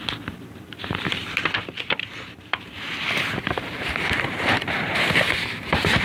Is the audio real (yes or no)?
no